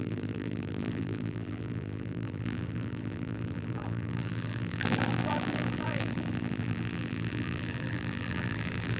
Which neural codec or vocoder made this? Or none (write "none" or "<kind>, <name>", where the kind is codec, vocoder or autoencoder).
vocoder, BigVGAN v2